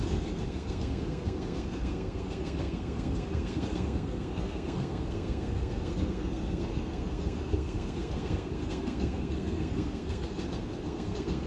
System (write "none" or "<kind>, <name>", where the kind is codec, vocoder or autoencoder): codec, SNAC